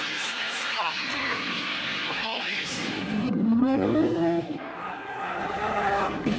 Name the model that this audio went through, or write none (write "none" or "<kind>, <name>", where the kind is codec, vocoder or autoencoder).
codec, SNAC